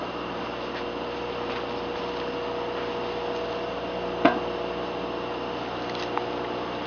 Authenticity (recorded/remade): recorded